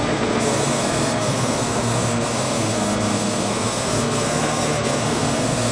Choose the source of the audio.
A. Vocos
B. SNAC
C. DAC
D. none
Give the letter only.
B